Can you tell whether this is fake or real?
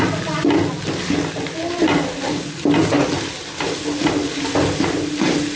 real